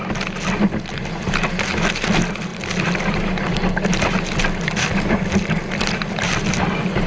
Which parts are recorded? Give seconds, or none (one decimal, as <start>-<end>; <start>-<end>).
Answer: 0.0-7.1